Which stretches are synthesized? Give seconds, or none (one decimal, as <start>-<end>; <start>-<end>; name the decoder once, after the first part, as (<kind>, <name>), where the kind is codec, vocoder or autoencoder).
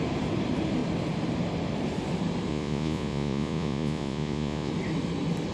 2.5-4.7 (vocoder, Vocos)